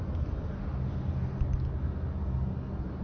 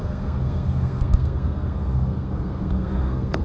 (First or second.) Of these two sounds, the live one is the first